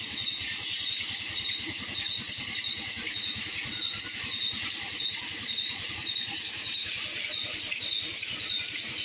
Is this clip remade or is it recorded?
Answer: remade